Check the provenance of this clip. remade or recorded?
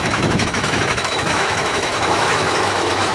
remade